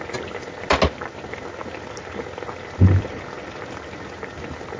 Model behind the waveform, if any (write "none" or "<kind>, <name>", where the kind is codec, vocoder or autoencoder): none